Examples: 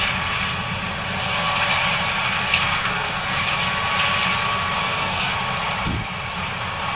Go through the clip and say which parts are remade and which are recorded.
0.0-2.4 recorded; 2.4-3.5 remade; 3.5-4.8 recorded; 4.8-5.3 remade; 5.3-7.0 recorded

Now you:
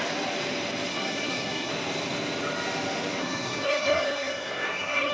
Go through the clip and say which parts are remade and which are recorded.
0.0-0.9 recorded; 0.9-1.7 remade; 1.7-3.2 recorded; 3.2-5.1 remade

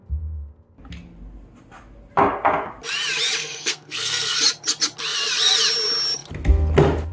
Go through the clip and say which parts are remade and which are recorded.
0.0-3.4 recorded; 3.4-4.4 remade; 4.4-7.1 recorded